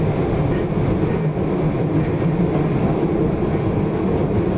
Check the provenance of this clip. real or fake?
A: real